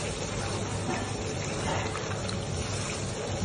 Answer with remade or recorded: recorded